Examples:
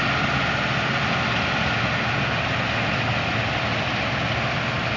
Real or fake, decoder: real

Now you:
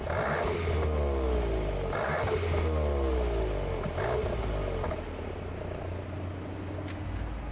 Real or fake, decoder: real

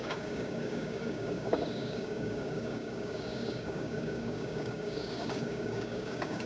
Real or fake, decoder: fake, codec, DAC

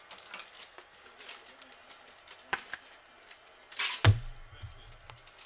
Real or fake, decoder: real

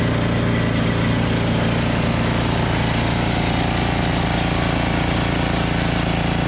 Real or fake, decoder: real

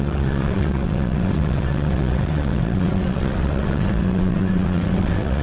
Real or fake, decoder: fake, vocoder, WaveNeXt